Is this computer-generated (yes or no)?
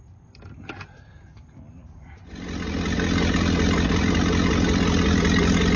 no